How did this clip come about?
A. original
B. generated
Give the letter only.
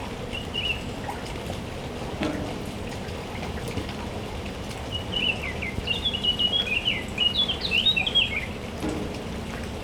A